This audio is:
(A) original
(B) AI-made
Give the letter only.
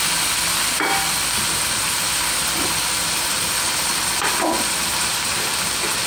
A